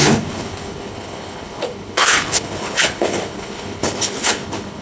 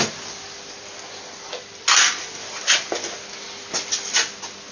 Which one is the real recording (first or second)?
second